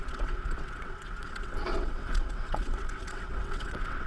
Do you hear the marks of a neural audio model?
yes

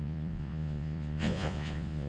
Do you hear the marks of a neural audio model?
yes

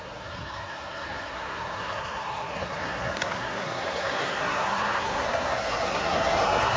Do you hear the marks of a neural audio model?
yes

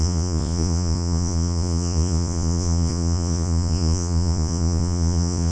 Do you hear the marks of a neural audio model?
yes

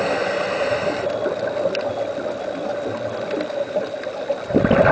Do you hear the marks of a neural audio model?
no